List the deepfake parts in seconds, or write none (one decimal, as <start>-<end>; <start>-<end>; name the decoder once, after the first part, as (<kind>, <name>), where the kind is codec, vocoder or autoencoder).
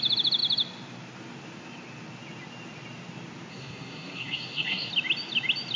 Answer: 3.5-4.9 (codec, SNAC)